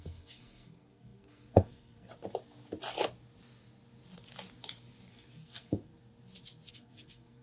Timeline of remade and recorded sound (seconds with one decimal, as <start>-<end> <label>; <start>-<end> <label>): 0.0-2.1 remade; 2.1-5.1 recorded; 5.1-5.9 remade; 5.9-6.7 recorded; 6.7-7.4 remade